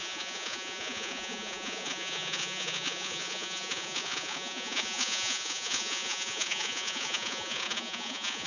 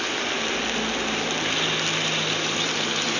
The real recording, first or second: second